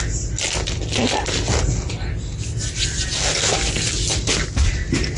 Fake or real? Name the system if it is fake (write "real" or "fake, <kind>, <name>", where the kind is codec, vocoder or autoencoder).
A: real